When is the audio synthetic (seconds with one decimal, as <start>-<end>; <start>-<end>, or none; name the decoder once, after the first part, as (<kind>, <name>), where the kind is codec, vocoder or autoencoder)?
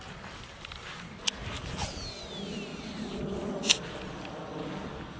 none